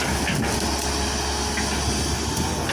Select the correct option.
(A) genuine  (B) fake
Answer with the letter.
A